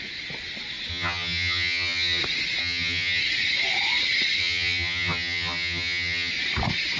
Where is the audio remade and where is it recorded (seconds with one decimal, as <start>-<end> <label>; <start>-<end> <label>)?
0.0-0.9 recorded; 0.9-2.2 remade; 2.2-2.6 recorded; 2.6-3.2 remade; 3.2-4.4 recorded; 4.4-6.3 remade; 6.3-7.0 recorded